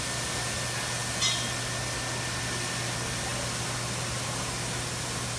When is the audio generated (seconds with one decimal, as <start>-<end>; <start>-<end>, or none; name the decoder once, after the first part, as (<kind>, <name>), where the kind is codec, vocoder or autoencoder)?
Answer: none